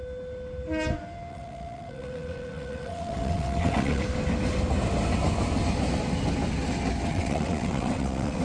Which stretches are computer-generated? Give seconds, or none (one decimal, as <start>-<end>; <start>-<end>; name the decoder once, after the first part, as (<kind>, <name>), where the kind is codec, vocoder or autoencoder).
1.3-4.0 (vocoder, WaveNeXt); 7.1-8.4